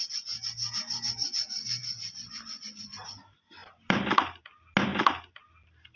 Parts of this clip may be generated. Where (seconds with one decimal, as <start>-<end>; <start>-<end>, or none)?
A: 3.6-4.4; 4.9-5.4